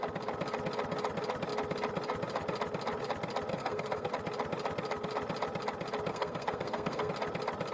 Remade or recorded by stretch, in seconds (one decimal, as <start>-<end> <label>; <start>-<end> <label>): 0.0-3.5 recorded; 3.5-4.1 remade; 4.1-6.1 recorded; 6.1-7.1 remade; 7.1-7.7 recorded